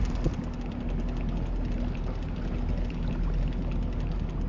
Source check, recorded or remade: recorded